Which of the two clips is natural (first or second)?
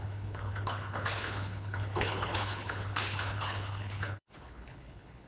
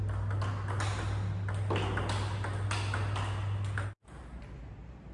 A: second